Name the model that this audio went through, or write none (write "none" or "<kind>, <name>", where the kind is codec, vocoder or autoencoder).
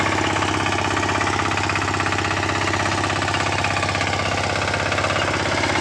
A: none